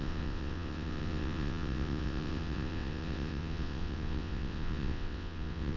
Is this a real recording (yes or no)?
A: no